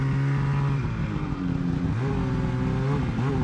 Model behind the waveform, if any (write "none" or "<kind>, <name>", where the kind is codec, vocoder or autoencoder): none